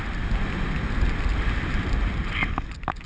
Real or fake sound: real